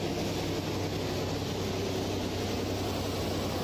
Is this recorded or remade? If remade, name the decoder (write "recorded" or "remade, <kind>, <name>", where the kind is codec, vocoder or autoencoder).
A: recorded